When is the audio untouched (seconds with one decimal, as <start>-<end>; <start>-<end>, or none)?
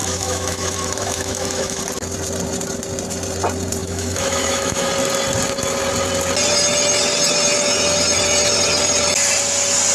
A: 1.8-3.8; 4.9-9.9